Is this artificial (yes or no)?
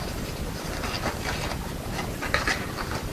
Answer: no